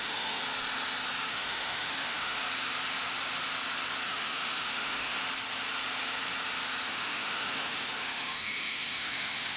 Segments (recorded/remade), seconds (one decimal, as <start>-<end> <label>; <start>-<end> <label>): 0.0-0.4 remade; 0.4-1.3 recorded; 1.3-2.4 remade; 2.4-4.1 recorded; 4.1-5.2 remade; 5.2-6.9 recorded; 6.9-9.6 remade